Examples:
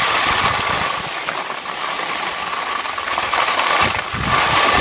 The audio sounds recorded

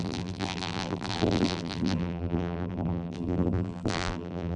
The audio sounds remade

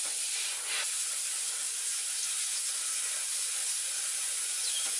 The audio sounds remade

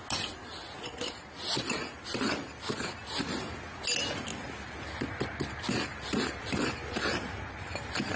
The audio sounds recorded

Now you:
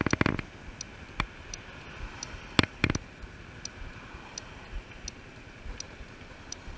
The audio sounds recorded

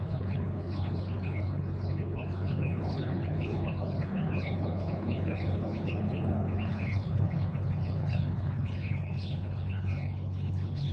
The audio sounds remade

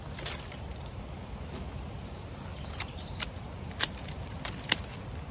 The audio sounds recorded